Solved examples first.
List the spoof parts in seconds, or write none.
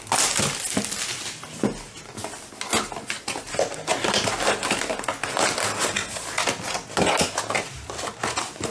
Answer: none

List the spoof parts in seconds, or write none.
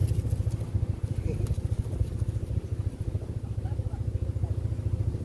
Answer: none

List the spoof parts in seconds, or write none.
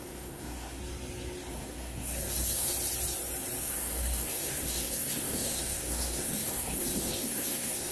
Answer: 0.0-0.8 (codec, SNAC); 1.5-2.7; 3.6-7.9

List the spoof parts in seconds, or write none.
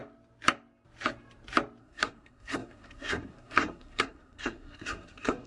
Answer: 1.8-5.5 (codec, SNAC)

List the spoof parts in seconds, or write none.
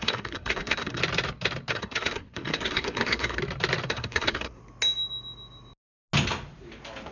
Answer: 0.0-1.0 (codec, SNAC); 1.7-3.4; 3.9-4.6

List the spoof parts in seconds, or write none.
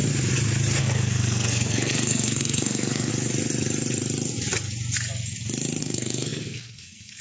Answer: 0.8-3.1 (codec, SNAC); 5.8-7.2